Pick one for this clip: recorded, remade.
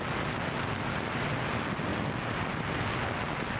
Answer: recorded